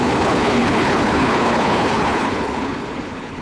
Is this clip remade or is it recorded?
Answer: remade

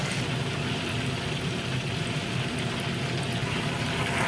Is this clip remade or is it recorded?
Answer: recorded